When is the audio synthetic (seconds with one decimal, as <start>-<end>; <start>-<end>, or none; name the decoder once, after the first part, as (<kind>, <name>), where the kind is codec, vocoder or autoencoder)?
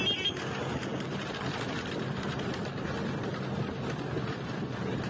none